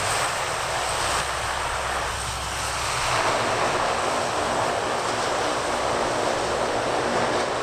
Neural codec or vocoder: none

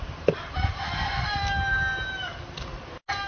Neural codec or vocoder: none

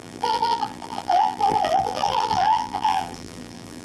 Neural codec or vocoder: vocoder, BigVGAN v2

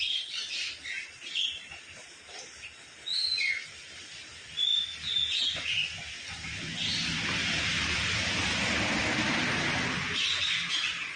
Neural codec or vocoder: none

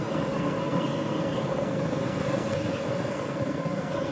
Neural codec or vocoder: codec, SNAC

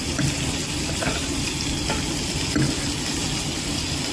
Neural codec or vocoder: none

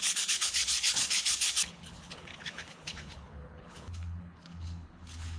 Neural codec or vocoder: codec, HILCodec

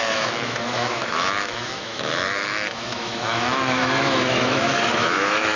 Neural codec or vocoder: autoencoder, DAC-VAE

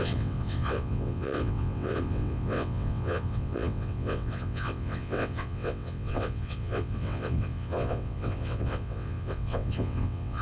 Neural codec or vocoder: vocoder, WaveNeXt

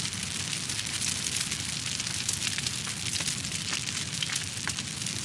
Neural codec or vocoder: none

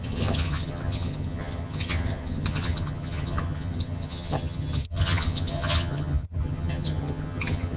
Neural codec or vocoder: vocoder, HiFi-GAN